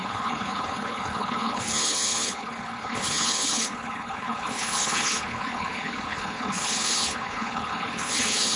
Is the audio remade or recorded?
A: remade